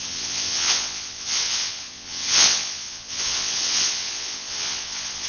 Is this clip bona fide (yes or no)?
no